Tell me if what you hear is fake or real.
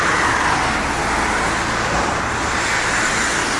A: real